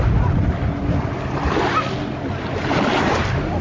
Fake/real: real